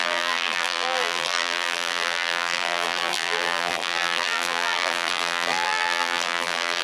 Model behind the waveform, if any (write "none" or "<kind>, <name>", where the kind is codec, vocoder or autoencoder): vocoder, BigVGAN v2